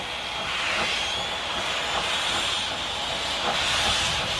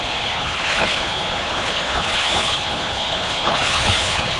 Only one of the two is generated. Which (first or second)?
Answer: second